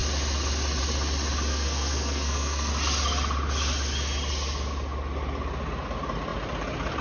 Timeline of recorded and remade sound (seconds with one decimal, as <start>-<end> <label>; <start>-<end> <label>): 0.0-1.5 recorded; 1.5-2.7 remade; 2.7-7.0 recorded